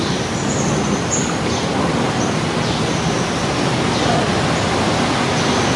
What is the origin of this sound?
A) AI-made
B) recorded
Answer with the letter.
B